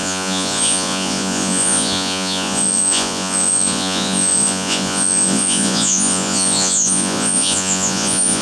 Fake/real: fake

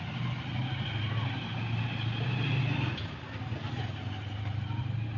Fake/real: real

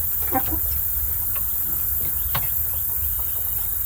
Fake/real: real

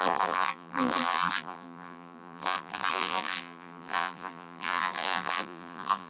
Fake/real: fake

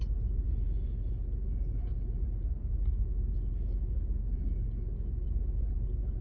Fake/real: real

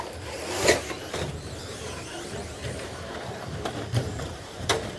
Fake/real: fake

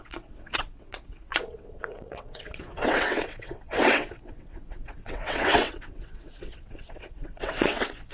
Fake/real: fake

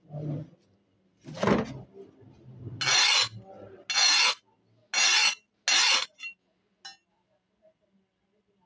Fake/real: real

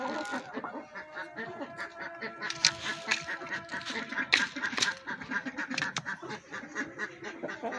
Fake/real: real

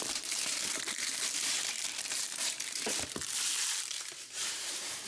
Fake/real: fake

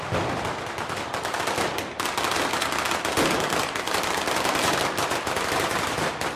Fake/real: real